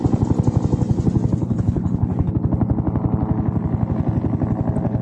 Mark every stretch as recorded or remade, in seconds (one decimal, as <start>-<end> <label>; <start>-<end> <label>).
0.0-1.4 recorded; 1.4-2.3 remade; 2.3-5.0 recorded